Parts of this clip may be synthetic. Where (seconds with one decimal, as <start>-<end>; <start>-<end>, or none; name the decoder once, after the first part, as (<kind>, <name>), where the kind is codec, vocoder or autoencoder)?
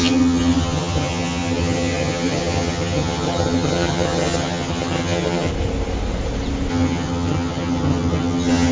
0.0-5.5 (vocoder, HiFi-GAN); 6.7-8.7